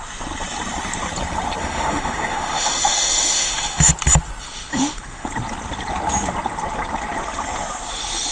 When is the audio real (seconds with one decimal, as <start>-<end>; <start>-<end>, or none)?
0.0-1.6; 3.9-4.7; 5.3-8.3